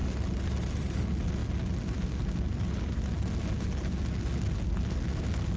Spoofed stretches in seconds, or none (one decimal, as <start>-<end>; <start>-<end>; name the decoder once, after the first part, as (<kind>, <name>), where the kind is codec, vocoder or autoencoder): none